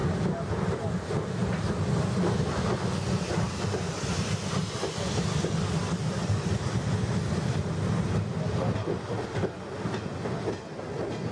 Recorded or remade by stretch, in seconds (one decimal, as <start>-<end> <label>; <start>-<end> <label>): 0.0-11.3 recorded